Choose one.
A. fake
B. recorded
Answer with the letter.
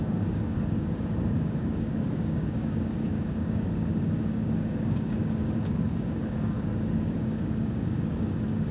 A